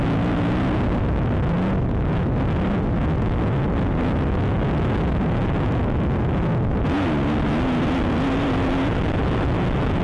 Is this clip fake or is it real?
real